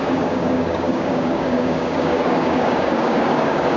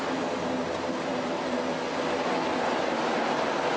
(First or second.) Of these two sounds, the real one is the second